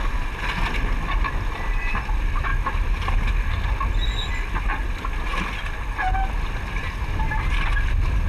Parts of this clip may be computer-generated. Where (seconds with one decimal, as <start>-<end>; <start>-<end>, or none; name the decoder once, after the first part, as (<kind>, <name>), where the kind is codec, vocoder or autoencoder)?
none